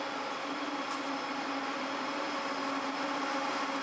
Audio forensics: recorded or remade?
recorded